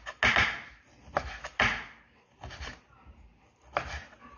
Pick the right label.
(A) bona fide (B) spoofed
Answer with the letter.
A